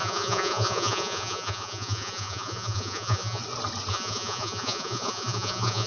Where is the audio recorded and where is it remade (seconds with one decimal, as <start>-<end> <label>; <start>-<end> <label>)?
0.0-3.4 remade; 3.4-3.9 recorded; 3.9-5.9 remade